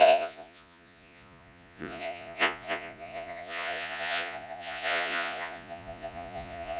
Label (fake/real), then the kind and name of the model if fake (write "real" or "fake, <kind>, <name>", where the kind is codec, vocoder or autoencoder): fake, vocoder, Vocos